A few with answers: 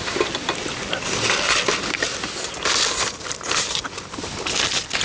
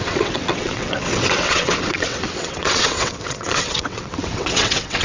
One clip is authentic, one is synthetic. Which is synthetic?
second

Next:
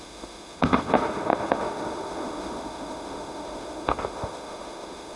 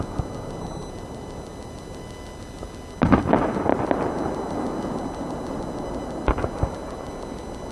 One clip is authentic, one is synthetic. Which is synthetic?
first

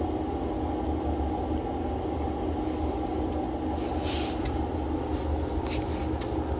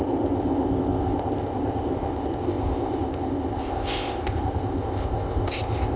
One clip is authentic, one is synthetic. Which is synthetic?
second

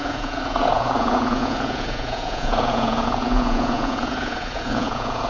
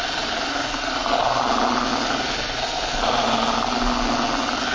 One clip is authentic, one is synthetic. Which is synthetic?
first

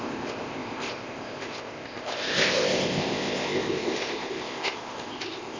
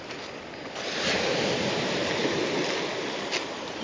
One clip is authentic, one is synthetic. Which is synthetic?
first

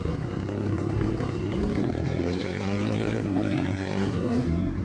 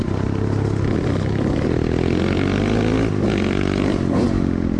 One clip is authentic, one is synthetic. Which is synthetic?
first